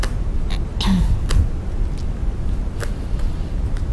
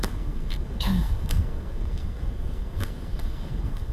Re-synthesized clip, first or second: second